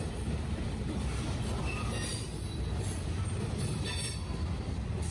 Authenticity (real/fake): real